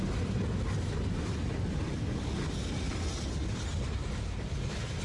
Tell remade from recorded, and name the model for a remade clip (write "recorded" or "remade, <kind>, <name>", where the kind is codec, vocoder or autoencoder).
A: recorded